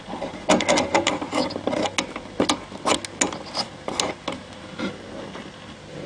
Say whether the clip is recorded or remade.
recorded